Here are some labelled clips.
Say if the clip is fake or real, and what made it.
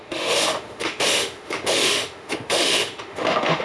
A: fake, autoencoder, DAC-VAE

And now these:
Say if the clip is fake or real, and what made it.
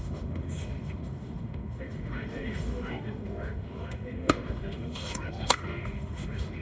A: fake, autoencoder, DAC-VAE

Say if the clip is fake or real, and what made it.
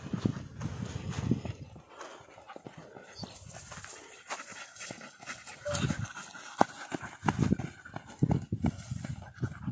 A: real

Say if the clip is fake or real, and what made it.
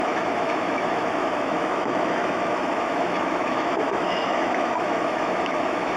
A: fake, autoencoder, DAC-VAE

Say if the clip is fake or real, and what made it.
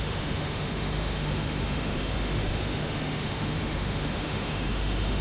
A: fake, autoencoder, DAC-VAE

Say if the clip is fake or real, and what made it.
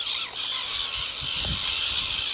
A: real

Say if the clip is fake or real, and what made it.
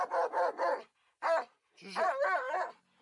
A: real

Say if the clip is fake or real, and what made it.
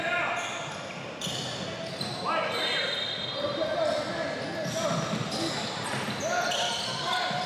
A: real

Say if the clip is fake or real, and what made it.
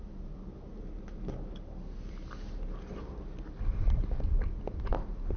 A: real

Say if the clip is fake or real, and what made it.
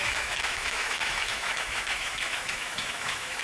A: fake, autoencoder, DAC-VAE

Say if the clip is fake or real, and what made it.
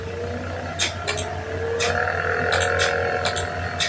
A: real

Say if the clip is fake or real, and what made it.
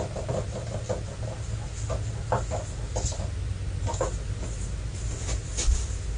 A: real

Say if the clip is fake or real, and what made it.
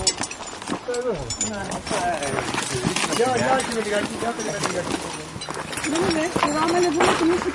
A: real